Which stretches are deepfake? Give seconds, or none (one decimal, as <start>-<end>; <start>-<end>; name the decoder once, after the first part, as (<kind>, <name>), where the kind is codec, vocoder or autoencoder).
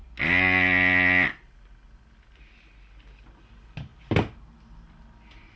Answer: none